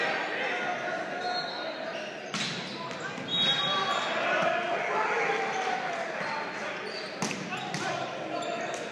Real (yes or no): yes